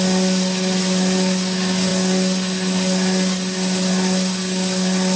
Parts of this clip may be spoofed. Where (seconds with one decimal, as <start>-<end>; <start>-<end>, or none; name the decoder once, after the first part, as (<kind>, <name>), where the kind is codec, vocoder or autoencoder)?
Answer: none

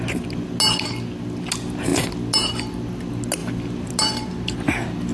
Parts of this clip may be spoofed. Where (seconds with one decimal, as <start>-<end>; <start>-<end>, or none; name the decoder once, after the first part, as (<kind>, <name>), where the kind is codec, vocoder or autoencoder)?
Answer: none

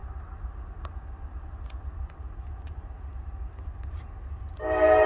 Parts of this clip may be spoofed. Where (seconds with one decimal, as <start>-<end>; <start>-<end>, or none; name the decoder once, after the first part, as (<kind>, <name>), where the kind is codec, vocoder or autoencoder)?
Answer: none

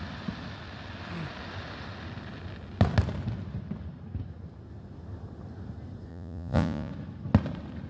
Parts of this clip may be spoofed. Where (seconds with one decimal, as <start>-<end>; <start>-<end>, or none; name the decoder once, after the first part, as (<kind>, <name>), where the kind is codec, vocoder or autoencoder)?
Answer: 6.1-6.9 (vocoder, Vocos)

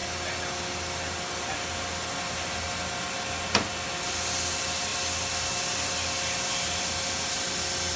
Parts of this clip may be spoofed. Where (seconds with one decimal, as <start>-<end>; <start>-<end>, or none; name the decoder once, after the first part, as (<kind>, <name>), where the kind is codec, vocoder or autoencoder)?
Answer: none

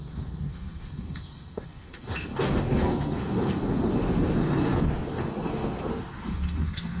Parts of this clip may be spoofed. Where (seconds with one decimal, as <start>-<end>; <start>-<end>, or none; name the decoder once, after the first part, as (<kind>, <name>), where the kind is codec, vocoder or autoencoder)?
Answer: 0.0-7.0 (codec, SNAC)

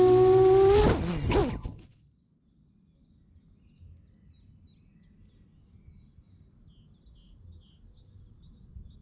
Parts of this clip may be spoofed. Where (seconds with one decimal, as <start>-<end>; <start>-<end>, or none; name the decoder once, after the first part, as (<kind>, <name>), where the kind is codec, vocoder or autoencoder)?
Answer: none

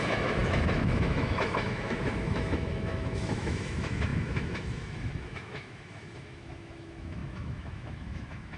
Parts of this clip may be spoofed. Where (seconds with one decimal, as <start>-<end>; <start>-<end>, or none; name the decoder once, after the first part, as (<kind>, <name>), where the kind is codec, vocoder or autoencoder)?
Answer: 0.0-8.6 (autoencoder, DAC-VAE)